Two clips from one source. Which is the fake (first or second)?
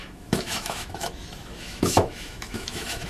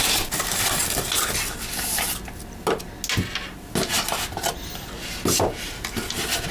first